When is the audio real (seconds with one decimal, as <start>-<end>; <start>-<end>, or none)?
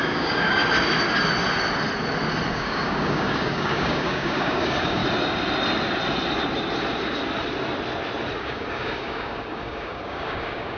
0.6-2.5; 5.0-8.4